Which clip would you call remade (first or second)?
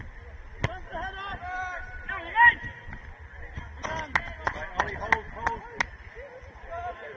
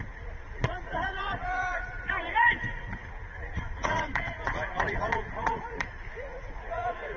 second